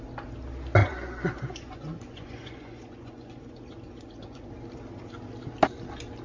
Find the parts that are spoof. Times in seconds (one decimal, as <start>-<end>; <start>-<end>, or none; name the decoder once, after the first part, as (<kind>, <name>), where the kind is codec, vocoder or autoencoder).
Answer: 0.8-4.5 (vocoder, Vocos)